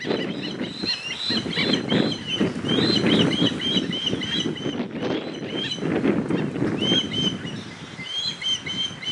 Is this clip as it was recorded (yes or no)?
yes